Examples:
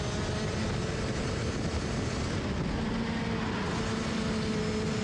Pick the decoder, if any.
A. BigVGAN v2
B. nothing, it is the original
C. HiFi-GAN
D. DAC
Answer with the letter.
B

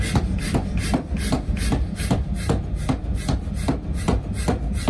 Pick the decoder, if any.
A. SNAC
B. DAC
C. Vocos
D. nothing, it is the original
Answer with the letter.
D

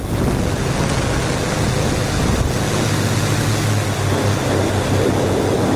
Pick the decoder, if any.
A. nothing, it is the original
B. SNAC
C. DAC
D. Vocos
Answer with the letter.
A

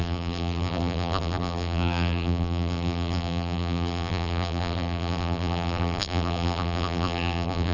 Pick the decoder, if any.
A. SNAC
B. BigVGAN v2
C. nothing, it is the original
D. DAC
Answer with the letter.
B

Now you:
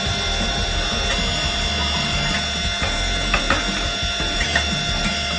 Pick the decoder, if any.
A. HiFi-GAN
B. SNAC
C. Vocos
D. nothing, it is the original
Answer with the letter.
D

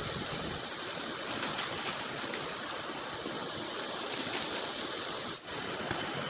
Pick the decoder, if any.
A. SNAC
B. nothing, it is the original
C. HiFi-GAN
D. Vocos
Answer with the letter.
B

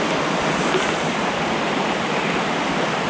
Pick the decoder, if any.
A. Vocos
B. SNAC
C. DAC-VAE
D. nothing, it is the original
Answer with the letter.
D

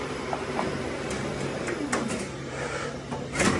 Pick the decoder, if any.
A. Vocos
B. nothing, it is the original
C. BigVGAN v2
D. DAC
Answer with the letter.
C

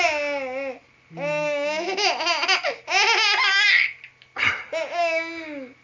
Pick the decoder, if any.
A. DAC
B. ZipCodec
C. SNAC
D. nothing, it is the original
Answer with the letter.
D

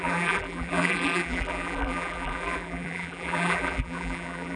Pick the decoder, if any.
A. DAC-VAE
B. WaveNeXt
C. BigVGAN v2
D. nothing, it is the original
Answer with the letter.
C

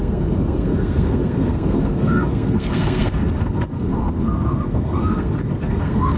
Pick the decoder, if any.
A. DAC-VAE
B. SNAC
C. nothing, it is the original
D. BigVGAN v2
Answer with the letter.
B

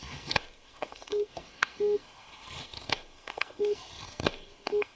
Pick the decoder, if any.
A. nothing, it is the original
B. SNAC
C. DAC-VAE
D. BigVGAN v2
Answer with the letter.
B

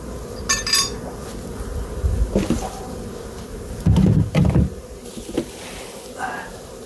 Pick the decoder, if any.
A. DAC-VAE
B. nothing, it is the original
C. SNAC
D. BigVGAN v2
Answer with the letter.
B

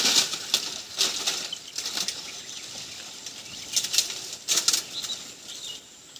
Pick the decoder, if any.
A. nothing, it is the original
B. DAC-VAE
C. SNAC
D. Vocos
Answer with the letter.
A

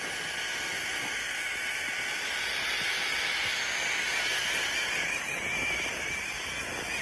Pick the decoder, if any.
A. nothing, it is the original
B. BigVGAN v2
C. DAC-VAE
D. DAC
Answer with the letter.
A